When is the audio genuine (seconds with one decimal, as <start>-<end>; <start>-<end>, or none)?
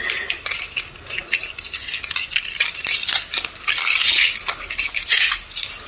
0.0-5.9